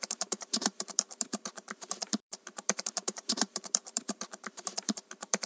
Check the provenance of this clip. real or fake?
fake